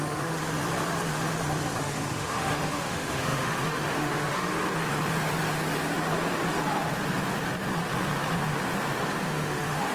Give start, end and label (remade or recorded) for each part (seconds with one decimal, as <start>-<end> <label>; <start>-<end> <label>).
0.0-0.4 remade; 0.4-1.8 recorded; 1.8-4.5 remade; 4.5-9.2 recorded; 9.2-9.9 remade